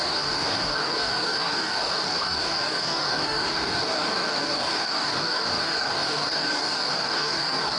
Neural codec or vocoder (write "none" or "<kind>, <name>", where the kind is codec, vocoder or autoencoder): codec, DAC